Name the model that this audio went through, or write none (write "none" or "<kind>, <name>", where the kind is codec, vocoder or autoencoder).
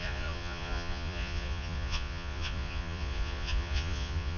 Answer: vocoder, Vocos